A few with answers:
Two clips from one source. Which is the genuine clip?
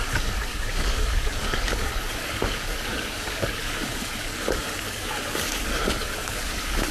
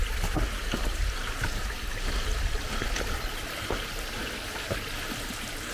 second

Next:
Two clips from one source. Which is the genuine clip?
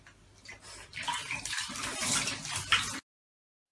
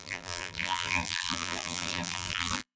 first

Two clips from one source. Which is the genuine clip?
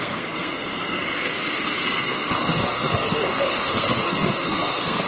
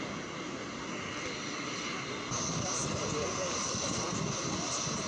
second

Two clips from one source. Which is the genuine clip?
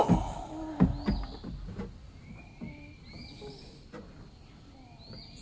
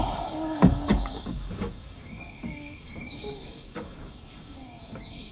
first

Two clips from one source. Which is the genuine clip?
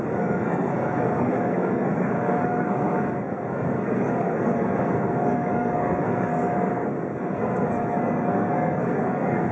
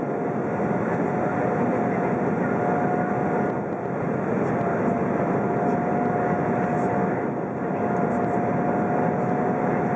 second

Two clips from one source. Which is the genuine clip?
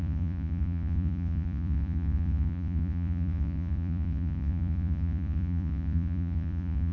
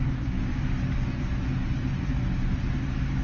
second